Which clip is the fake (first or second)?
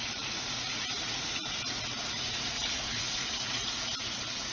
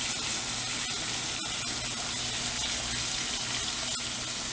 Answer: first